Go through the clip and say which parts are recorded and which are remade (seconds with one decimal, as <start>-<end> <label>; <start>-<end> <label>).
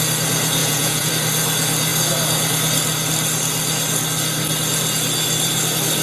0.0-0.6 recorded; 0.6-1.1 remade; 1.1-6.0 recorded